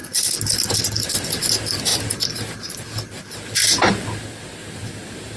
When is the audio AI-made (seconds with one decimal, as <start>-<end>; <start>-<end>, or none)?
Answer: 1.9-2.7; 4.6-5.4